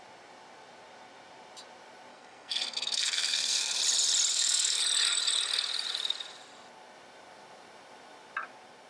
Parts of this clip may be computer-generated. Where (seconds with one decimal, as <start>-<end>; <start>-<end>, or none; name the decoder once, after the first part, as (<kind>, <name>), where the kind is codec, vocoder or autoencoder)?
2.1-3.8 (codec, SNAC); 4.3-4.8